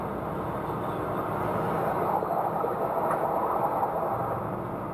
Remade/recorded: recorded